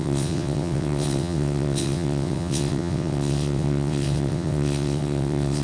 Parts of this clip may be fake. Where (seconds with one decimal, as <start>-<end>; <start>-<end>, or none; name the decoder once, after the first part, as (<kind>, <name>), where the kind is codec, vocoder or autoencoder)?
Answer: 0.0-5.6 (vocoder, WaveNeXt)